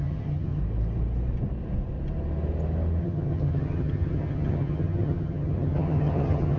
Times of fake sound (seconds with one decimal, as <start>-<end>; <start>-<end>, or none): 0.0-0.6; 3.0-6.6